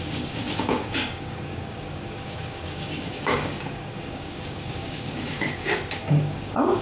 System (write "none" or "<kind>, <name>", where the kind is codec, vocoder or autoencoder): codec, DAC